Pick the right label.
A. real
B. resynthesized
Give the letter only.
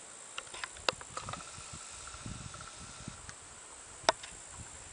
A